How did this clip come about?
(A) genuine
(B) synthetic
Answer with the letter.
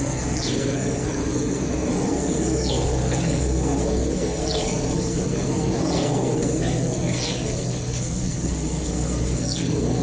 B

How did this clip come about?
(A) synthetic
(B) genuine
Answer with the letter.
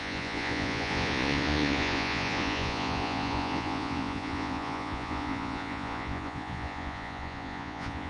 A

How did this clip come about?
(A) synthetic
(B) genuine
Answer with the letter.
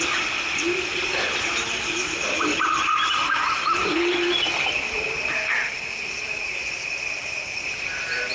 B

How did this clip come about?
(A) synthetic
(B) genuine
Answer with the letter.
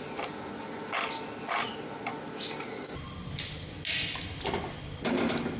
B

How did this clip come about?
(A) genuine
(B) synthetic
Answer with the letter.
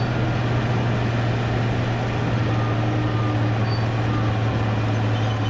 A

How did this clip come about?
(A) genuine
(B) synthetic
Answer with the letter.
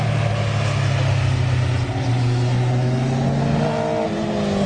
A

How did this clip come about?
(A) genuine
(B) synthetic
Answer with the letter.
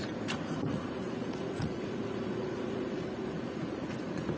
B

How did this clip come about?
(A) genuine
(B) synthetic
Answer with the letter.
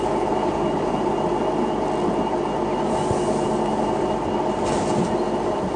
A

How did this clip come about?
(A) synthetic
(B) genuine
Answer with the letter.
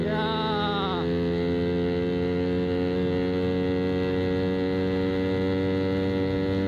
B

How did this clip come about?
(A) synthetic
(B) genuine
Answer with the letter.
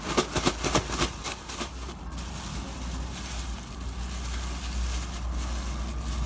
B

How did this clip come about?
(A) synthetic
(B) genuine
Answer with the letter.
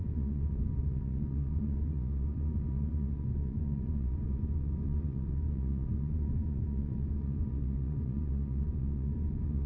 A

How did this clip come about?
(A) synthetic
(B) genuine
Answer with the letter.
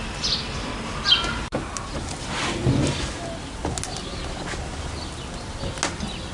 B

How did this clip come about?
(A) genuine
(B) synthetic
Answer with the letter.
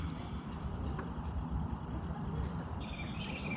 A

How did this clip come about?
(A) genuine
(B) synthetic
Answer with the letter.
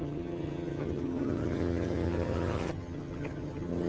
B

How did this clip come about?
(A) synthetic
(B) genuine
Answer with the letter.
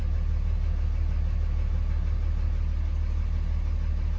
B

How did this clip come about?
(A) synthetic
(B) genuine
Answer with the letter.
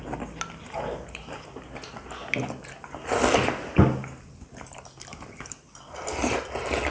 B